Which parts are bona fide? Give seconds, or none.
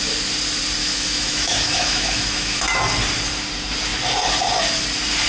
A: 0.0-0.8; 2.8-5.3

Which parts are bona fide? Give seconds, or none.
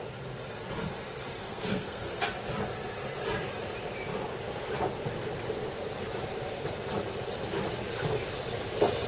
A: 0.0-1.4; 2.2-9.1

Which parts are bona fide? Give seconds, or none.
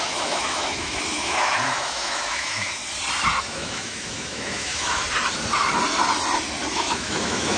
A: 2.8-3.4; 5.0-6.7